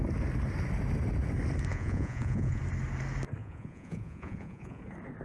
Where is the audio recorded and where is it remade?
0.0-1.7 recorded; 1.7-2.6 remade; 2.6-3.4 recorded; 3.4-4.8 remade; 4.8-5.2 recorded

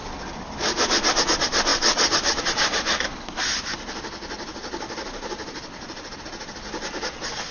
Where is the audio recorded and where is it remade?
0.0-7.5 recorded

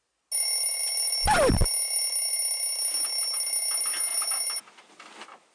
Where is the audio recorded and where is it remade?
0.0-5.5 recorded

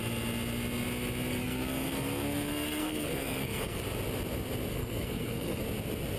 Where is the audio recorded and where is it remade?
0.0-1.3 recorded; 1.3-3.8 remade; 3.8-4.7 recorded; 4.7-5.6 remade; 5.6-6.2 recorded

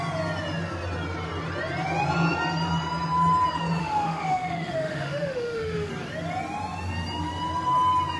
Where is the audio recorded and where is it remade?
0.0-3.8 recorded; 3.8-5.9 remade; 5.9-8.2 recorded

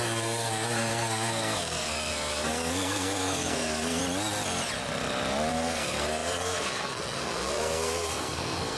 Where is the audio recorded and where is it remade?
0.0-4.0 remade; 4.0-5.5 recorded; 5.5-8.8 remade